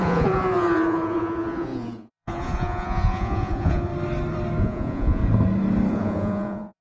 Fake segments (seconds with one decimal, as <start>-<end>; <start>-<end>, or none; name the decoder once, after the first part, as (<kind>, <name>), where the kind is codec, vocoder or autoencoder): 0.0-3.9 (vocoder, Vocos); 4.6-5.2; 5.9-6.8